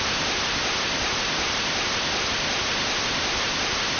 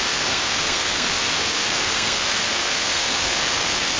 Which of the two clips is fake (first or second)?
second